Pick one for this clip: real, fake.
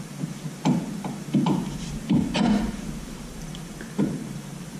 fake